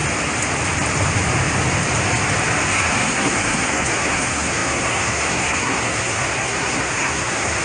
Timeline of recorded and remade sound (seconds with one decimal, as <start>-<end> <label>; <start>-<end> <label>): 0.0-2.7 recorded; 2.7-7.6 remade